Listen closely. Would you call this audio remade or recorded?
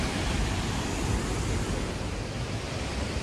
recorded